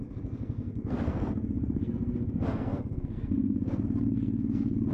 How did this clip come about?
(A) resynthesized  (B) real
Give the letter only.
A